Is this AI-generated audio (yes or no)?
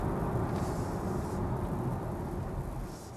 no